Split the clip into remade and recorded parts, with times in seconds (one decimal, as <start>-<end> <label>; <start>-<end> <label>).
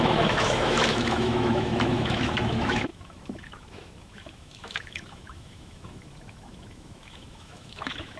0.0-8.2 remade